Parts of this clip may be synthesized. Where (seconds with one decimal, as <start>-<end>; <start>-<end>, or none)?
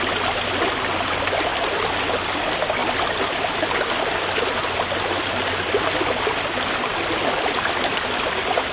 2.8-5.8; 6.9-8.7